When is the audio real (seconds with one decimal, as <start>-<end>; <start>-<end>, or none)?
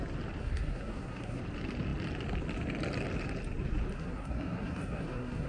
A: 0.0-0.4; 1.4-3.9